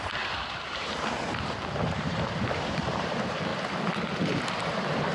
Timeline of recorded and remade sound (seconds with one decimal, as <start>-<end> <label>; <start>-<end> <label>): 0.0-3.5 remade; 3.5-4.5 recorded; 4.5-5.1 remade